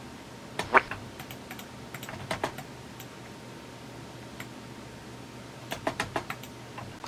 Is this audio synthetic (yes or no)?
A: no